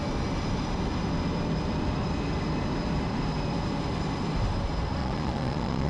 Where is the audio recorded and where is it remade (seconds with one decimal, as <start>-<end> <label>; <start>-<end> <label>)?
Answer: 0.0-5.0 recorded; 5.0-5.9 remade